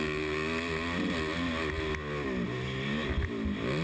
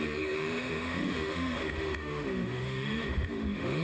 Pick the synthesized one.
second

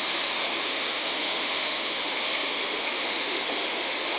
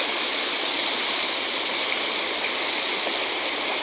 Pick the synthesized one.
first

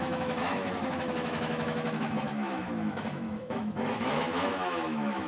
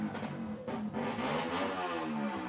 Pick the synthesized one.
first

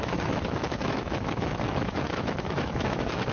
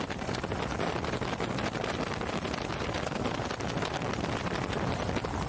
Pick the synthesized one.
first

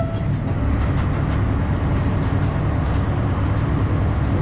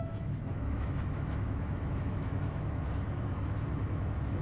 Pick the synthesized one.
second